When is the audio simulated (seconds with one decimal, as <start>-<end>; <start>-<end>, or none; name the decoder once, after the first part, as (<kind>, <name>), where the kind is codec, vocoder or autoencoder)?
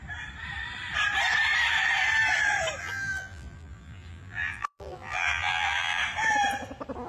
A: 2.8-6.0 (vocoder, BigVGAN v2)